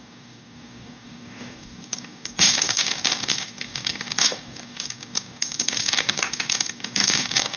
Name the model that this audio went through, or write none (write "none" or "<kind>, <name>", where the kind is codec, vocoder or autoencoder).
codec, DAC